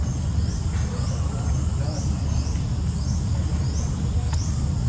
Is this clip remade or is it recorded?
recorded